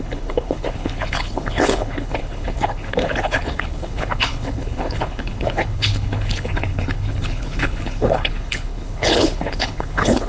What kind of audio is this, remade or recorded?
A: remade